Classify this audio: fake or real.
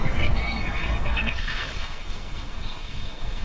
fake